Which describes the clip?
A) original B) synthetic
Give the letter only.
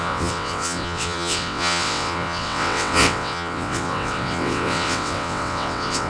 B